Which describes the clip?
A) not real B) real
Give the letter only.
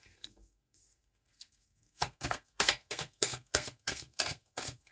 A